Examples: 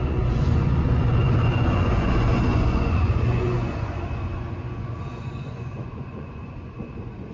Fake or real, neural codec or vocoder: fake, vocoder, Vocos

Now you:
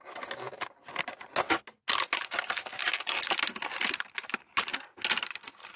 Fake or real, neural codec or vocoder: real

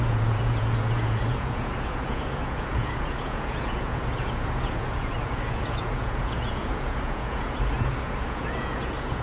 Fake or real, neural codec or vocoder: fake, vocoder, Vocos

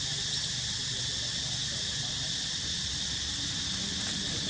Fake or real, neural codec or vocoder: real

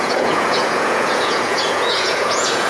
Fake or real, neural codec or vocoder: fake, vocoder, Vocos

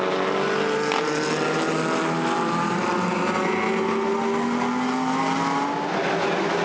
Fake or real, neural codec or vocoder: real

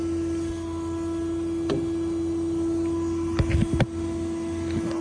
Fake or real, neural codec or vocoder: real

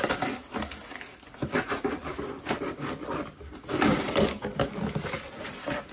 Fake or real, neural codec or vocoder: real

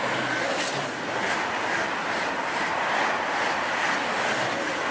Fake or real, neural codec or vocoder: real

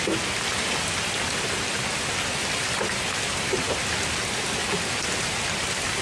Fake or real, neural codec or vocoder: real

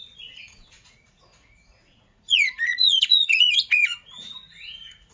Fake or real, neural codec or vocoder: fake, vocoder, Vocos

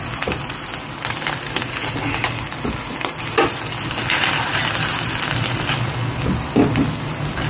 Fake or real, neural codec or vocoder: real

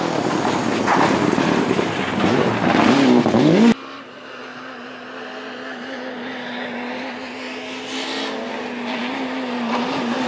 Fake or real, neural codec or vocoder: real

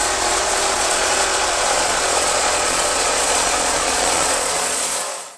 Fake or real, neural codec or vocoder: fake, vocoder, Vocos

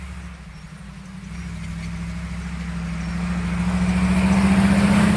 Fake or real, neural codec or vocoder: real